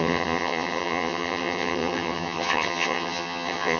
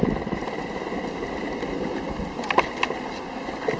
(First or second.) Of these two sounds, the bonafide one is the second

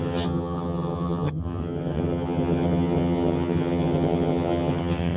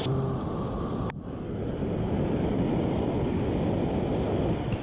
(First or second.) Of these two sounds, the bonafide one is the second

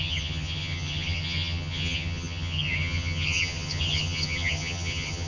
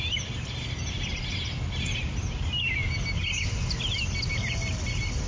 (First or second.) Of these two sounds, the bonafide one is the second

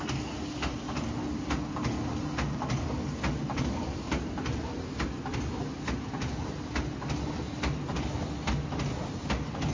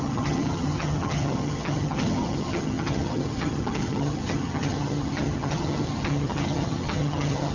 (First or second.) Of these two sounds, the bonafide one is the first